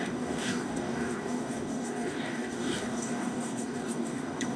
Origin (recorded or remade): remade